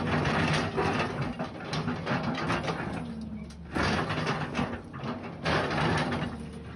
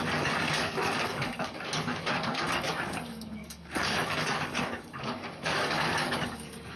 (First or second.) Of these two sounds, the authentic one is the first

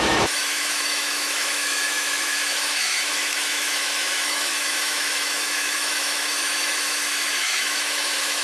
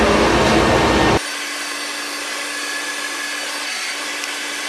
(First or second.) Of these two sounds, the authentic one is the second